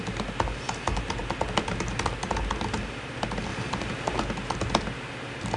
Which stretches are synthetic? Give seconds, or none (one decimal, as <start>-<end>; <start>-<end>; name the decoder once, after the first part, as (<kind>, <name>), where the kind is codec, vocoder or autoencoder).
none